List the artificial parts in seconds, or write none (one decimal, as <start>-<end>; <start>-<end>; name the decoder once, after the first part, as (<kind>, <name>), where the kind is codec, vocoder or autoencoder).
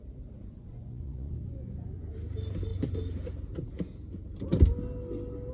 0.4-2.1 (vocoder, Vocos)